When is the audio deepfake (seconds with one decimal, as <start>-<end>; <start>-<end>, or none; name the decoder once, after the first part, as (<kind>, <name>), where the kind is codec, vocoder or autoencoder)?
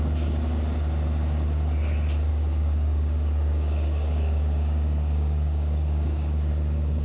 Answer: 2.3-6.5 (codec, DAC)